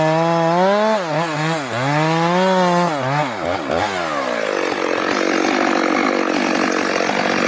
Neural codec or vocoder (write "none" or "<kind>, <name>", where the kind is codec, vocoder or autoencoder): none